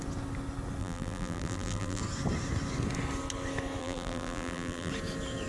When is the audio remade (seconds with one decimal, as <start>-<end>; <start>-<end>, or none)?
0.8-2.0; 3.8-4.9